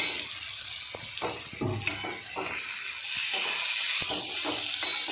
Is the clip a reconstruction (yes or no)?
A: no